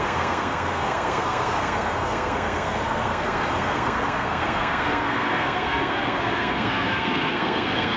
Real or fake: fake